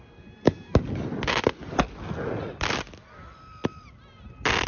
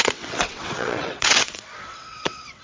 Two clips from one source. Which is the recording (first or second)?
first